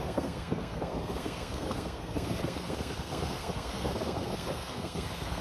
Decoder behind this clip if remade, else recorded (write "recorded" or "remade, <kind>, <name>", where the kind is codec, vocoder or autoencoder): remade, codec, SNAC